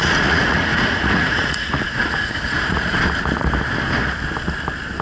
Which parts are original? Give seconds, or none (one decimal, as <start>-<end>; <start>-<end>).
3.0-5.0